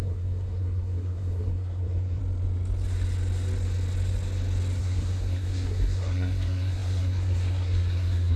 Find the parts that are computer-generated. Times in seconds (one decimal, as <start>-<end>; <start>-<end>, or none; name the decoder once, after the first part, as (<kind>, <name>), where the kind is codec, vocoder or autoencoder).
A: 0.0-2.2 (codec, SNAC); 4.8-8.4